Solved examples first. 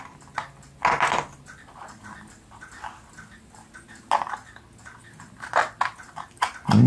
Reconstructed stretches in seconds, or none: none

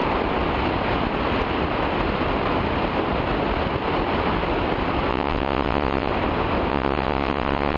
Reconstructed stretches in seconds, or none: 5.1-6.1 (vocoder, WaveNeXt); 6.7-7.8